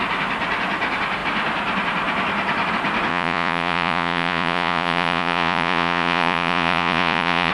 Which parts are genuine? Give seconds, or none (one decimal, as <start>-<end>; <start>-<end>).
0.0-3.1